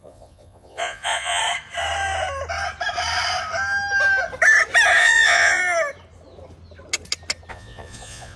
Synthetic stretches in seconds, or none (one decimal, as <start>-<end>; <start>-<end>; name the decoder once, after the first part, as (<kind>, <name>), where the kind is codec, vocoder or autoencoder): 0.0-1.4 (vocoder, Vocos); 5.0-5.6; 7.5-8.4